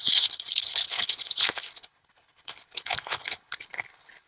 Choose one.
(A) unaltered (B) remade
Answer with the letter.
B